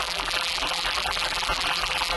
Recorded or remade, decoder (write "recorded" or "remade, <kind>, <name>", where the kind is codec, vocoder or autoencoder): remade, vocoder, BigVGAN v2